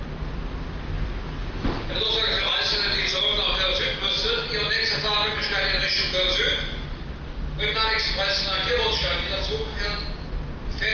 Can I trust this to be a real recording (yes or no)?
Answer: yes